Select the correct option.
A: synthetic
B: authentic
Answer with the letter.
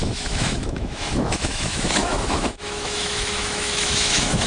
A